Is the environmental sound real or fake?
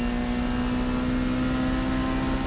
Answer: real